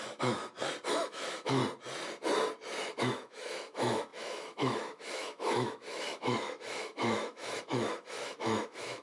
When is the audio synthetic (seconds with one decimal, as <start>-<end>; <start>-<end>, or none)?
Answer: 0.0-0.4; 0.9-1.6; 3.0-9.0